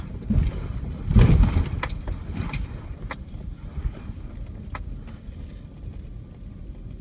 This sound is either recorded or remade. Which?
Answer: recorded